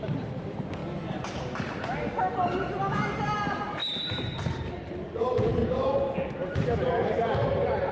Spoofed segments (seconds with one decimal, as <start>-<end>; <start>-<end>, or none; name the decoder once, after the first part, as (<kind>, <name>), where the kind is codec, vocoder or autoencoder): 0.0-0.8 (vocoder, BigVGAN v2); 2.9-5.6; 6.4-7.9